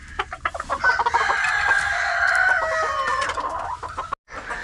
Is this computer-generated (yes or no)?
no